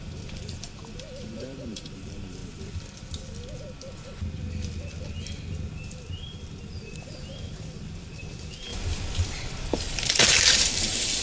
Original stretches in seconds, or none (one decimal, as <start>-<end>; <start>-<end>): 2.4-6.7; 8.7-10.1